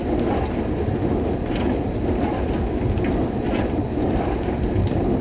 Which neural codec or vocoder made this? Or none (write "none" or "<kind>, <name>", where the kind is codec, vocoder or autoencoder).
none